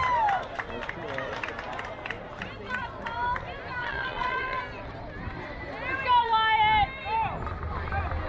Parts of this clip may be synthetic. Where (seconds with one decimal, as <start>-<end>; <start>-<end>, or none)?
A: 3.8-4.6